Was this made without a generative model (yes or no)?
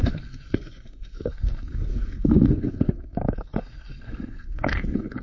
no